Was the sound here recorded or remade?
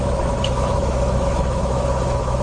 remade